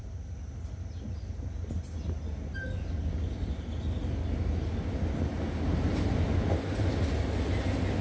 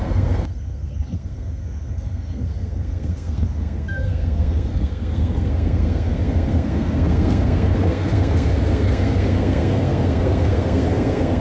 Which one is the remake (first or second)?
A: second